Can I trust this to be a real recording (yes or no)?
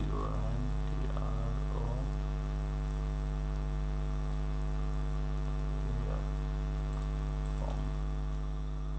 yes